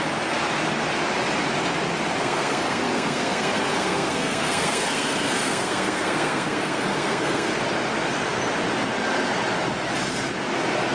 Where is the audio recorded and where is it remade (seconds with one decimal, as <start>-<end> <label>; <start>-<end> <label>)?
0.0-2.2 recorded; 2.2-7.5 remade; 7.5-10.9 recorded